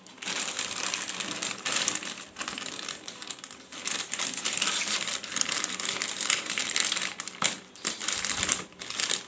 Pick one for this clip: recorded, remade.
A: remade